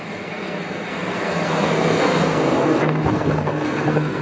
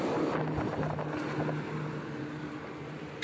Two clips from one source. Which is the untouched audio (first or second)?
second